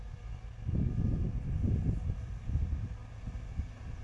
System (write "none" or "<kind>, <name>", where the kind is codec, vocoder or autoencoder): none